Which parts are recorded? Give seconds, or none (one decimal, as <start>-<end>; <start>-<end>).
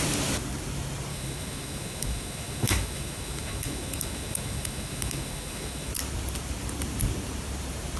0.0-1.1; 5.9-8.0